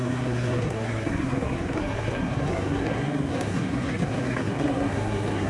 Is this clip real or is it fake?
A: fake